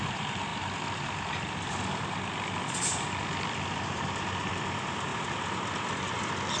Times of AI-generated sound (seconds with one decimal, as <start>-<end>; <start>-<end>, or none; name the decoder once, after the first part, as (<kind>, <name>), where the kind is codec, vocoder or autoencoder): none